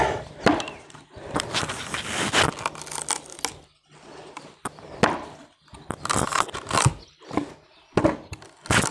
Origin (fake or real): real